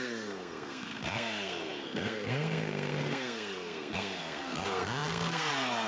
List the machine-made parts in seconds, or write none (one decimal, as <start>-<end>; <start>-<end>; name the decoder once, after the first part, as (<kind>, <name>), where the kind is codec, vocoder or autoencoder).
0.0-5.9 (codec, SNAC)